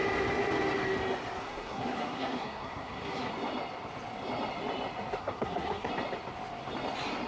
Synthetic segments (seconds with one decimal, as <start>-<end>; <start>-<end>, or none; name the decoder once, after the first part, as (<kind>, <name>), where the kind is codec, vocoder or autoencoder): 1.4-3.3 (codec, SNAC); 5.2-5.9